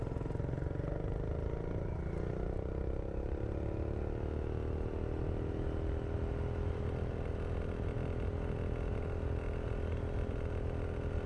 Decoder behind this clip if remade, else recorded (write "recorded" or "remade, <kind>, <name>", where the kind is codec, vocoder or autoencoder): recorded